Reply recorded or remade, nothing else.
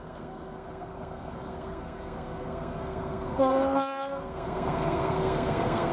remade